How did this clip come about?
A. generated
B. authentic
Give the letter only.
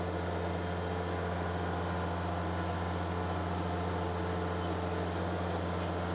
B